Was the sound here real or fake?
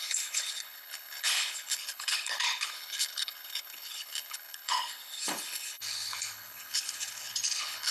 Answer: fake